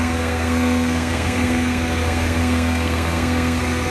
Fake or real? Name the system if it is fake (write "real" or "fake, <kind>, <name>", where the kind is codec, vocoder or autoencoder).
fake, codec, SNAC